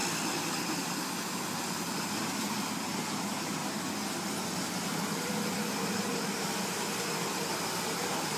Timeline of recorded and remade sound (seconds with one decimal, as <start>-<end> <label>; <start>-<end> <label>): 0.0-8.4 recorded